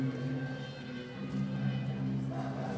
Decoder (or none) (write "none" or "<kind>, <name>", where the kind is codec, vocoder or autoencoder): none